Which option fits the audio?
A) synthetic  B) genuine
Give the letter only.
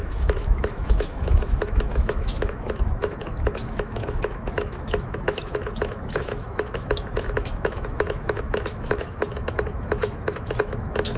A